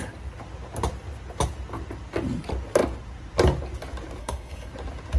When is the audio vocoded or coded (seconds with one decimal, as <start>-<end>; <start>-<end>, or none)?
4.2-4.7